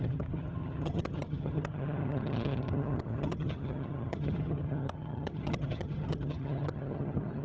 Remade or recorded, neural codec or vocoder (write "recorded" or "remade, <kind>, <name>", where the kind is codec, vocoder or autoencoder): remade, vocoder, HiFi-GAN